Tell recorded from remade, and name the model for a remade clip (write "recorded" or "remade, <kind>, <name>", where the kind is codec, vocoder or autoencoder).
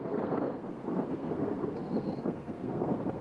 remade, codec, SNAC